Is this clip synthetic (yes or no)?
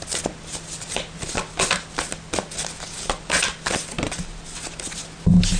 no